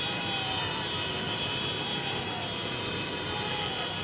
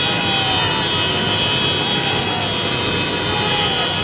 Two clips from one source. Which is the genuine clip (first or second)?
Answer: second